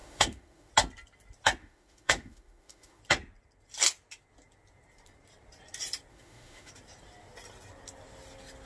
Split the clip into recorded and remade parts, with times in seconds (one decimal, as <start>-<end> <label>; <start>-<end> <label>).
0.0-0.7 remade; 0.7-1.6 recorded; 1.6-3.0 remade; 3.0-6.1 recorded; 6.1-6.7 remade; 6.7-8.7 recorded